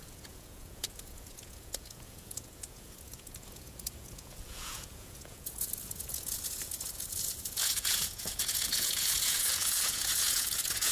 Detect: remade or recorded remade